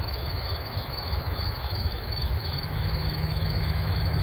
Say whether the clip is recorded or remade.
remade